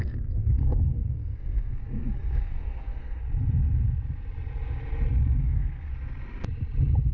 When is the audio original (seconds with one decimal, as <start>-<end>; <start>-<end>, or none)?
3.2-5.4; 5.9-7.1